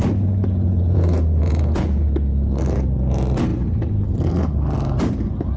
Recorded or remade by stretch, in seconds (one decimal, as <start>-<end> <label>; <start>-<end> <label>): 0.0-0.4 recorded; 0.4-2.0 remade; 2.0-5.6 recorded